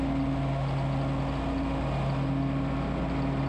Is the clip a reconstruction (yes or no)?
no